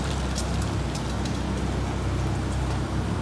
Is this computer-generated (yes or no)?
no